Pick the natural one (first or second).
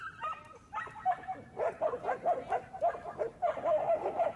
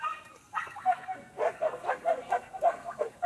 first